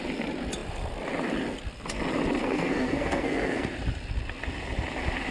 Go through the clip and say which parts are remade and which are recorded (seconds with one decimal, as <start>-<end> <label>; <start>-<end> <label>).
0.0-2.4 recorded; 2.4-3.7 remade; 3.7-5.3 recorded

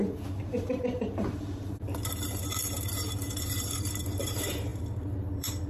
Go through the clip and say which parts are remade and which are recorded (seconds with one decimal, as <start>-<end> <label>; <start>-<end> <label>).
0.0-5.7 remade

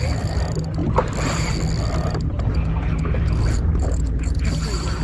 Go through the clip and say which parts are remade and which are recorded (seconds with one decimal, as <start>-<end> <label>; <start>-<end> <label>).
0.0-5.0 recorded

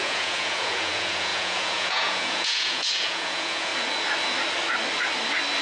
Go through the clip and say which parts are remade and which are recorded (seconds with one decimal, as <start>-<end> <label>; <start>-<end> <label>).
0.0-3.7 remade; 3.7-5.6 recorded

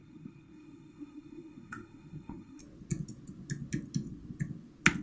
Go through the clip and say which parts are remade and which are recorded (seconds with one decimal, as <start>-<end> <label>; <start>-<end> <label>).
0.0-2.6 remade; 2.6-5.0 recorded

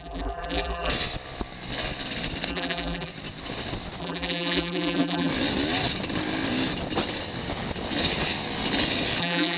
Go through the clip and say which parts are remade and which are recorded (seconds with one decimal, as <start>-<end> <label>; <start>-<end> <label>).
0.0-0.9 remade; 0.9-2.5 recorded; 2.5-3.1 remade; 3.1-4.0 recorded; 4.0-5.3 remade; 5.3-9.2 recorded; 9.2-9.6 remade